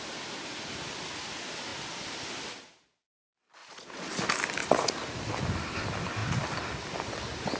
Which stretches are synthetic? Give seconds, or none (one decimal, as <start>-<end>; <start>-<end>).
3.6-4.1; 4.6-5.3